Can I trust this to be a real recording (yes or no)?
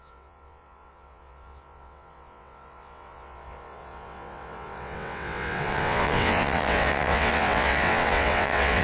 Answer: no